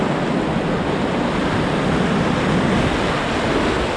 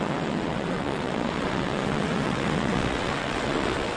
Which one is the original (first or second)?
first